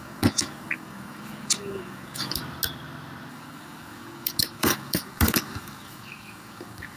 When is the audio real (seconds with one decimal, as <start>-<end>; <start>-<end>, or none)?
2.4-3.3